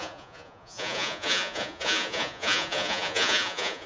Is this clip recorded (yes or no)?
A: no